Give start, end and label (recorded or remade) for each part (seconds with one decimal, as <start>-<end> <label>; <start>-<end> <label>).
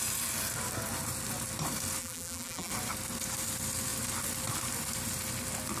0.0-2.0 recorded; 2.0-2.7 remade; 2.7-5.8 recorded